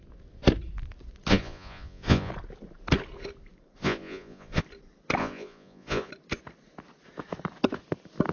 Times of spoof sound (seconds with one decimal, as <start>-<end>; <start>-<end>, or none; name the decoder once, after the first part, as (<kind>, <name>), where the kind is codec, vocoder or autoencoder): 1.3-2.3 (vocoder, Vocos); 3.8-4.6; 5.2-6.1